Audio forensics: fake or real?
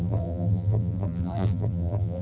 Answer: fake